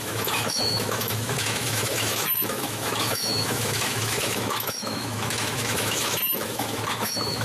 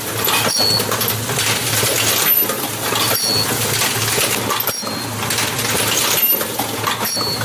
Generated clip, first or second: first